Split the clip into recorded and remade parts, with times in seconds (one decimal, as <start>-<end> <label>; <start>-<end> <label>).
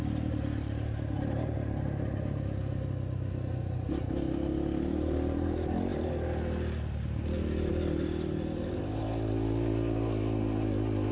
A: 0.0-11.1 recorded